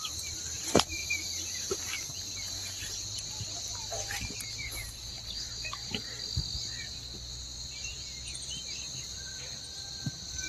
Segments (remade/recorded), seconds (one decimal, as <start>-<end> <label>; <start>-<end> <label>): 0.0-1.0 recorded; 1.0-6.2 remade; 6.2-10.5 recorded